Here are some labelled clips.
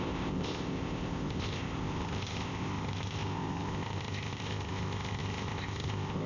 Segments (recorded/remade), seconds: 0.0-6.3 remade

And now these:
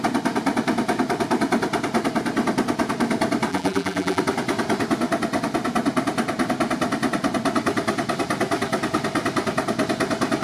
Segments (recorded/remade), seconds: 0.0-3.5 recorded; 3.5-4.2 remade; 4.2-10.4 recorded

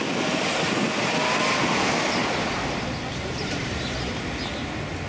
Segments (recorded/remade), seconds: 0.0-2.2 recorded; 2.2-4.3 remade; 4.3-5.1 recorded

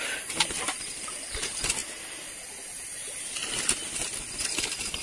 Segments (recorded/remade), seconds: 0.0-5.0 recorded

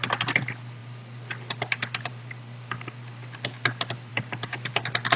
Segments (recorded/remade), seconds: 0.0-4.1 recorded; 4.1-4.8 remade; 4.8-5.2 recorded

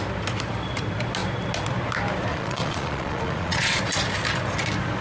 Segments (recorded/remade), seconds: 0.0-2.3 recorded; 2.3-3.8 remade; 3.8-5.0 recorded

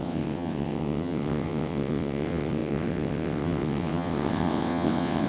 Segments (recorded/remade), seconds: 0.0-5.3 remade